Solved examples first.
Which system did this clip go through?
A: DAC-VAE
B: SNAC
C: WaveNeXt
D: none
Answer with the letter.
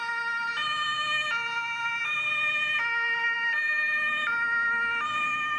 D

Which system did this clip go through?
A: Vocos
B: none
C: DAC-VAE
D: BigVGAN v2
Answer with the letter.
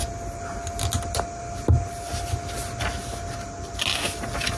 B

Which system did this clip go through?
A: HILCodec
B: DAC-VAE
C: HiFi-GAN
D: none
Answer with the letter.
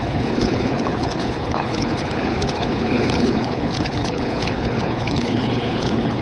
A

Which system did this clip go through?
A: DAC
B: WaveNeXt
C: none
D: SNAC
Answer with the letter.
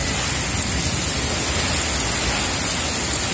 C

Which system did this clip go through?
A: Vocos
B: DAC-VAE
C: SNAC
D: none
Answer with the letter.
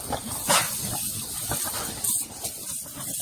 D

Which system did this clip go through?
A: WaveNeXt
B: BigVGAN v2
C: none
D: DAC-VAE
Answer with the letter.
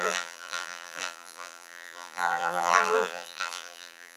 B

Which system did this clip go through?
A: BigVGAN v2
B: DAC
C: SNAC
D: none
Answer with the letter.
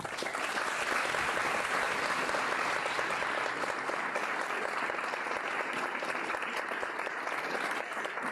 D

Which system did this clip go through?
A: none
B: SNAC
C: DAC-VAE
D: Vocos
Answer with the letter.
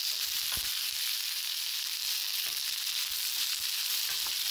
A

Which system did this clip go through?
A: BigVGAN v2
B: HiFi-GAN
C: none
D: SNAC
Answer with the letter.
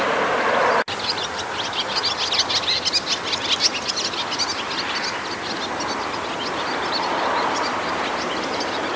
C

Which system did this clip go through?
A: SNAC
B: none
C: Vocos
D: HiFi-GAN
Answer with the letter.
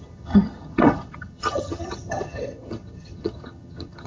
D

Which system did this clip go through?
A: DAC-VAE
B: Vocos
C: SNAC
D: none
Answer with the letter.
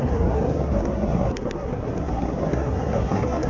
C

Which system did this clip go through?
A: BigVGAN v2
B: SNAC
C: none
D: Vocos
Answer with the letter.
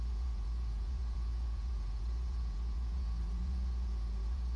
D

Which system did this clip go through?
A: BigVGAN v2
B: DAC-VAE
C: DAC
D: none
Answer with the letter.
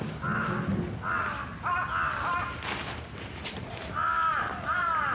D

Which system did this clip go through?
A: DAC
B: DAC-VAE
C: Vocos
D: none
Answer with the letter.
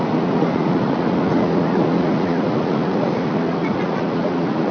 C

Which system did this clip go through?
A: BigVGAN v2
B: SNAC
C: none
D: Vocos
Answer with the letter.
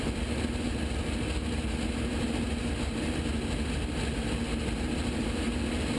C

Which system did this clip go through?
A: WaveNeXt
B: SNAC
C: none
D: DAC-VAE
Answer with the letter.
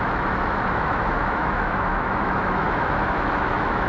D